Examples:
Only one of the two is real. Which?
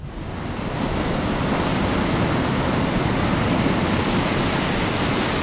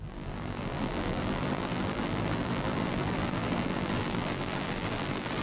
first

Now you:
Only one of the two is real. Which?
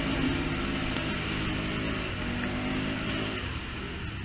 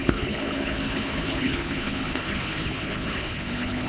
first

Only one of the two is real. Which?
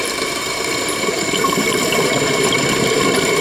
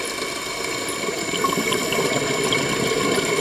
second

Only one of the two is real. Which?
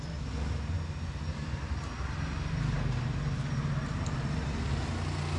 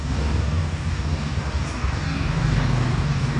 first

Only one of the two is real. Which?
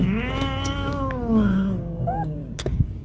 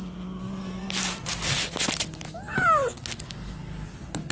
second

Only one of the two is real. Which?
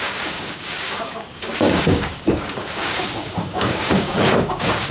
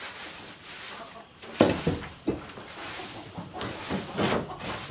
second